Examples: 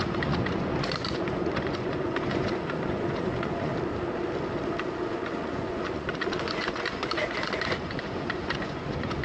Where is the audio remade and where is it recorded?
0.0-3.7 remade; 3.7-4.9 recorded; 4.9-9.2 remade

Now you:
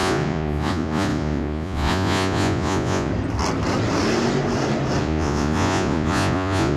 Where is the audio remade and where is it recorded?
0.0-3.1 remade; 3.1-5.0 recorded; 5.0-6.8 remade

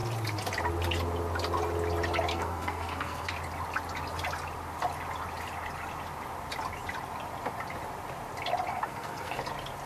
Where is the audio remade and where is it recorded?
0.0-2.3 recorded; 2.3-3.3 remade; 3.3-8.7 recorded; 8.7-9.4 remade; 9.4-9.9 recorded

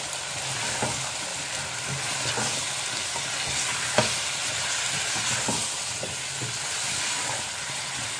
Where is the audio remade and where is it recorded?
0.0-8.2 recorded

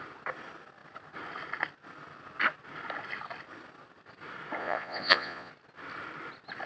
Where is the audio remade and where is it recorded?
0.0-4.6 recorded; 4.6-5.5 remade; 5.5-6.7 recorded

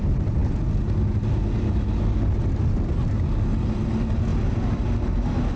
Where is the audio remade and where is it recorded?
0.0-5.6 recorded